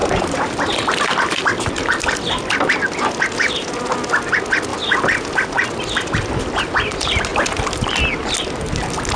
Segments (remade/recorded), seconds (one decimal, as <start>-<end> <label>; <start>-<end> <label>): 0.0-1.4 remade; 1.4-7.3 recorded; 7.3-8.0 remade; 8.0-9.2 recorded